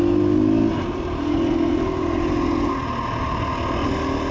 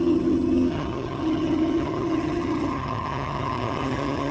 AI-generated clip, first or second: second